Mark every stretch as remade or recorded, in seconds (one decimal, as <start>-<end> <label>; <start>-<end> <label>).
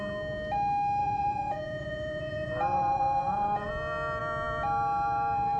0.0-1.0 recorded; 1.0-3.7 remade; 3.7-5.6 recorded